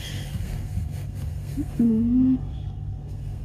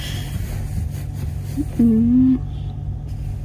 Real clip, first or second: second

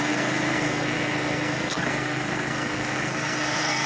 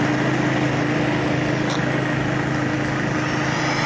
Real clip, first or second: second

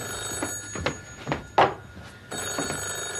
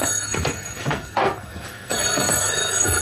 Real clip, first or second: first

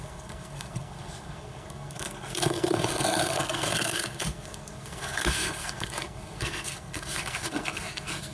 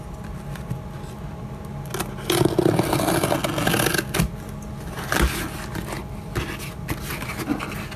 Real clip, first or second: second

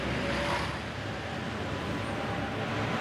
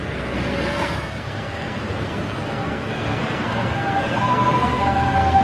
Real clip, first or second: first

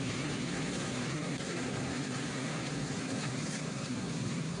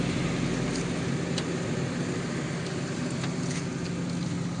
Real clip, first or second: second